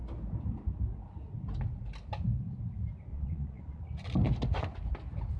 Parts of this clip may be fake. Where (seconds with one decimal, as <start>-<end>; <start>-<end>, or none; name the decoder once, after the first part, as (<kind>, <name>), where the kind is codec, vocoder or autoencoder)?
3.1-3.8 (vocoder, Vocos)